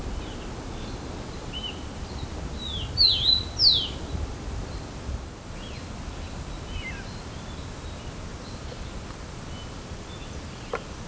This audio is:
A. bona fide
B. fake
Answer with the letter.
A